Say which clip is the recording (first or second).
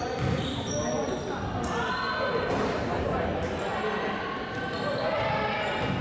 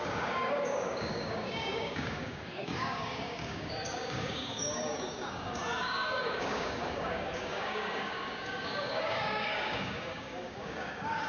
first